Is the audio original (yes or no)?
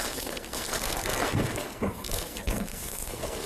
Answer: no